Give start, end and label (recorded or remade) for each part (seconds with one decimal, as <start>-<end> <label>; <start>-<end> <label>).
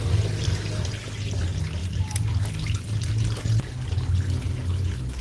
0.0-5.2 recorded